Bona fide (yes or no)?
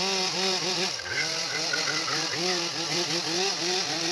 yes